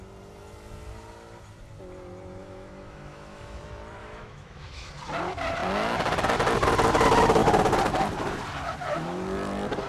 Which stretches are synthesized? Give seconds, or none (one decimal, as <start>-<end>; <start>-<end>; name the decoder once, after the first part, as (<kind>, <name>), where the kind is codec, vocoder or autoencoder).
2.4-3.6 (autoencoder, DAC-VAE); 4.0-4.9